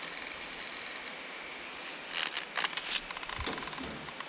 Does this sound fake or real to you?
real